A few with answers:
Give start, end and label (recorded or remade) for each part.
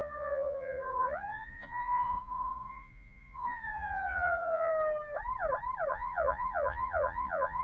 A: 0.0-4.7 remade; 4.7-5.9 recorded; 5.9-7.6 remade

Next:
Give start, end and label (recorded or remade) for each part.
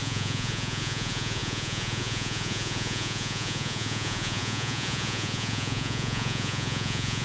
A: 0.0-7.2 remade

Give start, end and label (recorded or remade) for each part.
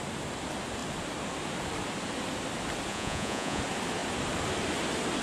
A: 0.0-2.9 recorded; 2.9-3.6 remade; 3.6-5.2 recorded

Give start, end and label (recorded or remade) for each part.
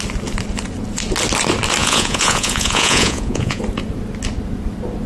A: 0.0-1.8 recorded; 1.8-3.6 remade; 3.6-5.1 recorded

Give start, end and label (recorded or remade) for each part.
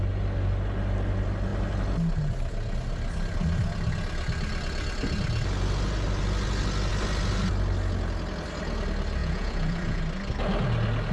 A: 0.0-9.2 recorded; 9.2-10.0 remade; 10.0-11.1 recorded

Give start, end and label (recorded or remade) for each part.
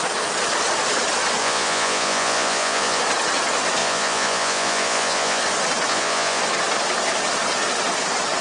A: 0.0-1.4 recorded; 1.4-3.0 remade; 3.0-3.8 recorded; 3.8-5.4 remade; 5.4-5.9 recorded; 5.9-6.4 remade; 6.4-8.4 recorded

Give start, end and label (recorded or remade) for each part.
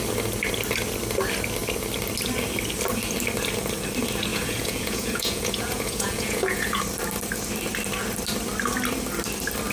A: 0.0-4.3 recorded; 4.3-6.8 remade; 6.8-9.7 recorded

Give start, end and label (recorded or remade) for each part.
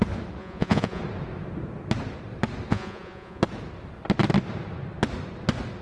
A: 0.0-0.4 recorded; 0.4-1.0 remade; 1.0-2.7 recorded; 2.7-3.4 remade; 3.4-5.8 recorded